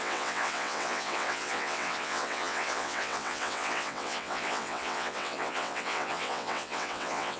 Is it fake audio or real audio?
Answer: fake